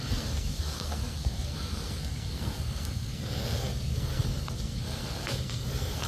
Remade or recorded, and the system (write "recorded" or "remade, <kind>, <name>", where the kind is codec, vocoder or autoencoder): remade, codec, SNAC